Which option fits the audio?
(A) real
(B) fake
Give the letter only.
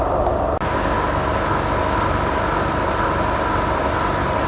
A